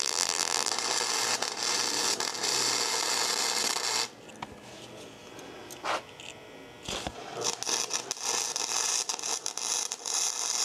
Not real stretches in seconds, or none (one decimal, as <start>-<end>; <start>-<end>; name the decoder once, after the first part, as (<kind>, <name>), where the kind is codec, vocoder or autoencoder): 0.0-0.7 (vocoder, BigVGAN v2)